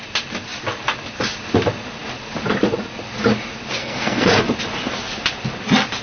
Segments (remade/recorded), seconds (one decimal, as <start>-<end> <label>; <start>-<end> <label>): 0.0-3.8 recorded; 3.8-4.4 remade; 4.4-6.0 recorded

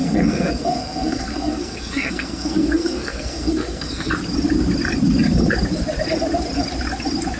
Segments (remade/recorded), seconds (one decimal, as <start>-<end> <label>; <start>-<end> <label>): 0.0-4.1 remade; 4.1-7.4 recorded

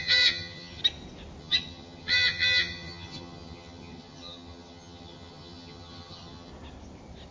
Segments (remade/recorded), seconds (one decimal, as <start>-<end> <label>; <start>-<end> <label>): 0.0-0.8 remade; 0.8-1.4 recorded; 1.4-6.5 remade; 6.5-7.3 recorded

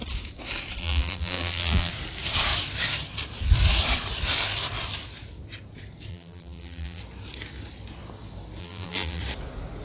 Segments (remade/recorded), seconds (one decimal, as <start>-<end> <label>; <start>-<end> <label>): 0.0-0.8 recorded; 0.8-1.9 remade; 1.9-6.1 recorded; 6.1-7.0 remade; 7.0-8.6 recorded; 8.6-9.2 remade; 9.2-9.8 recorded

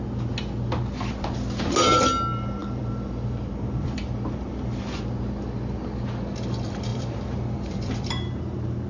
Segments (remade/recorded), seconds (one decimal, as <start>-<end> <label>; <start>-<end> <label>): 0.0-2.6 recorded; 2.6-4.8 remade; 4.8-6.9 recorded; 6.9-8.4 remade; 8.4-8.9 recorded

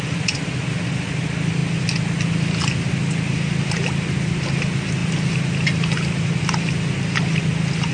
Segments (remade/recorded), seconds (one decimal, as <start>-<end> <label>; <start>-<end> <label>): 0.0-5.0 recorded; 5.0-6.4 remade; 6.4-7.9 recorded